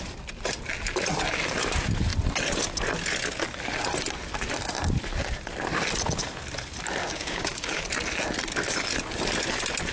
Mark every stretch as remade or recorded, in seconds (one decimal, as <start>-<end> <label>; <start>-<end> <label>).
0.0-7.0 recorded; 7.0-7.8 remade; 7.8-9.9 recorded